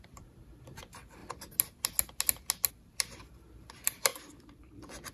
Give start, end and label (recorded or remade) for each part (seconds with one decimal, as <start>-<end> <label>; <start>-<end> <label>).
0.0-1.2 remade; 1.2-2.7 recorded; 2.7-5.1 remade